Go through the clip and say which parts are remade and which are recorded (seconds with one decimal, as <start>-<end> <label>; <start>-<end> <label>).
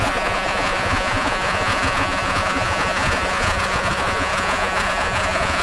0.0-5.6 remade